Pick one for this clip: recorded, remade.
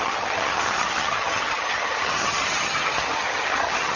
remade